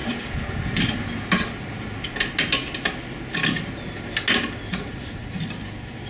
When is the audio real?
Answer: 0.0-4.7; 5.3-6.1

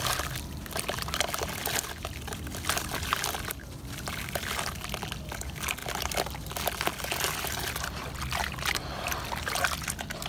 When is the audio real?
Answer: 0.0-10.3

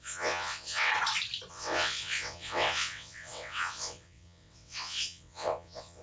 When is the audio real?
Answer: 0.9-1.5

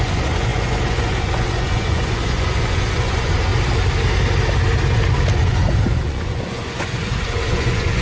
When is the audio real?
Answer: 3.5-5.3

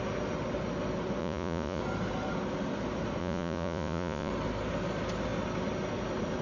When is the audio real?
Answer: 0.0-1.2; 1.8-3.2; 4.3-6.4

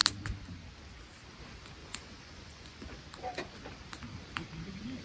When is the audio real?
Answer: 0.0-1.8; 3.0-5.0

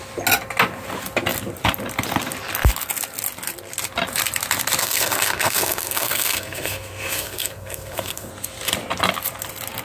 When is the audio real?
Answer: 0.0-4.8; 8.3-9.8

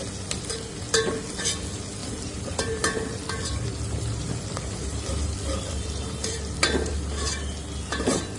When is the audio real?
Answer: 0.0-2.0; 7.0-8.4